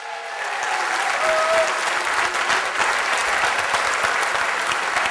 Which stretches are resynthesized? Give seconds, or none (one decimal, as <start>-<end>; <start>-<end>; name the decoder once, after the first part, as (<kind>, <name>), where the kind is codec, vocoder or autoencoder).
none